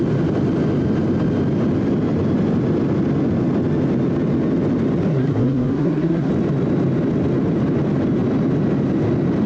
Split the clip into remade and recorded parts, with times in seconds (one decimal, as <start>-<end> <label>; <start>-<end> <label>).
0.0-5.1 recorded; 5.1-6.3 remade; 6.3-9.5 recorded